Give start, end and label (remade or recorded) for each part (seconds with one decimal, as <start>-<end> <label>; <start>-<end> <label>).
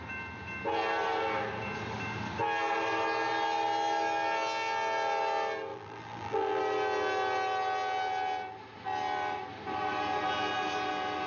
0.0-5.7 recorded; 5.7-6.6 remade; 6.6-11.3 recorded